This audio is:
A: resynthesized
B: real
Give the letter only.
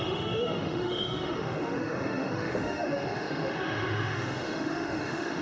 A